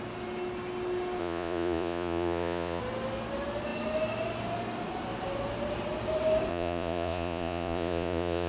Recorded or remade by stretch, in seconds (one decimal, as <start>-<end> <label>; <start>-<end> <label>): 0.0-1.2 recorded; 1.2-2.8 remade; 2.8-6.5 recorded; 6.5-8.5 remade